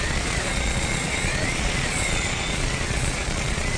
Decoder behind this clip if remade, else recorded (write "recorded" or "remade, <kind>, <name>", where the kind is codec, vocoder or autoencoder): remade, vocoder, Vocos